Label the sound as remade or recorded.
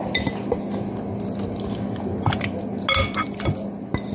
recorded